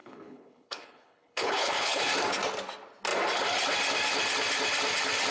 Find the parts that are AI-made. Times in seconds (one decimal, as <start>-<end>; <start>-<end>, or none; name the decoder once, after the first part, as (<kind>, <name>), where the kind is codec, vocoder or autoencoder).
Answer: 0.0-2.1 (codec, HILCodec)